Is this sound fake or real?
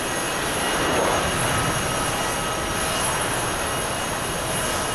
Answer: real